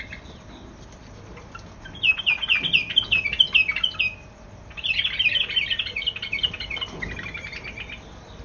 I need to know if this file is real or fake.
real